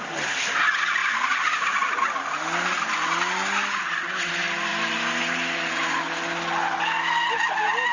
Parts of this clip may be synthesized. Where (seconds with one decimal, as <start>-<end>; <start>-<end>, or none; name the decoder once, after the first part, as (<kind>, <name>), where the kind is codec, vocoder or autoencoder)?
none